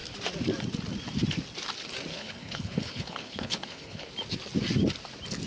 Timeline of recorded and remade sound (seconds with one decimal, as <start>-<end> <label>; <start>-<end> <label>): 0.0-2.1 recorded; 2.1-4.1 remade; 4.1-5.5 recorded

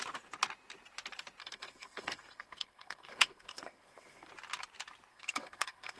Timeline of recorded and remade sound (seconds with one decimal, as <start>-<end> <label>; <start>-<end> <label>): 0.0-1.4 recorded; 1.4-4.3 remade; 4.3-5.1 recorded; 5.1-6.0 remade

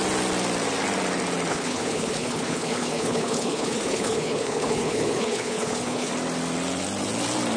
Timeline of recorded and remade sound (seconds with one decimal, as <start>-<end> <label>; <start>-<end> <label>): 0.0-1.5 recorded; 1.5-6.1 remade; 6.1-7.6 recorded

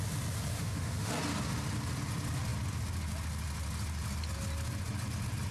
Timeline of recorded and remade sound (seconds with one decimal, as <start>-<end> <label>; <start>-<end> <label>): 0.0-0.5 recorded; 0.5-1.1 remade; 1.1-5.5 recorded

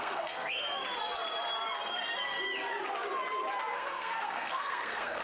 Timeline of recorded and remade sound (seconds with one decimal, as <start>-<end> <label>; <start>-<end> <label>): 0.0-0.6 remade; 0.6-3.7 recorded; 3.7-5.2 remade

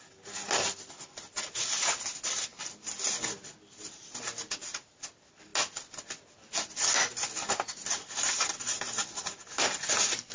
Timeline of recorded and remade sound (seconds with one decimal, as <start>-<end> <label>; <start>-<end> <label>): 0.0-10.3 recorded